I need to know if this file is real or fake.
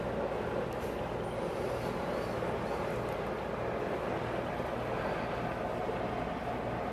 real